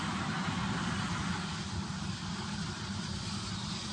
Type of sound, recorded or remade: recorded